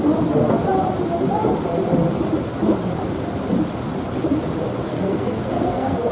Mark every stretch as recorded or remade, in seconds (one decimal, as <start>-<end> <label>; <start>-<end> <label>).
0.0-4.9 recorded; 4.9-6.1 remade